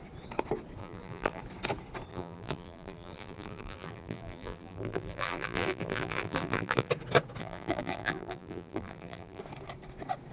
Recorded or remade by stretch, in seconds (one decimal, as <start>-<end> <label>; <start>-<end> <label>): 0.0-0.8 recorded; 0.8-1.4 remade; 1.4-2.1 recorded; 2.1-6.9 remade; 6.9-7.4 recorded; 7.4-9.4 remade; 9.4-10.3 recorded